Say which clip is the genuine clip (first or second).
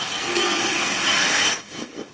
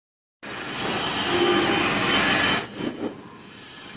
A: second